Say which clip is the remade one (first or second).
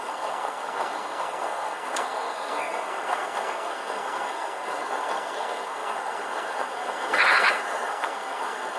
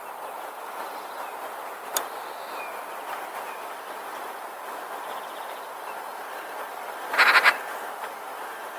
first